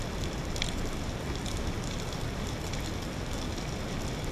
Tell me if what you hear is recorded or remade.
recorded